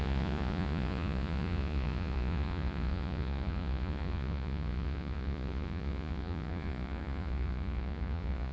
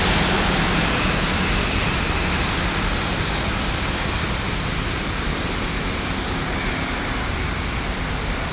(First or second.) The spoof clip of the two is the first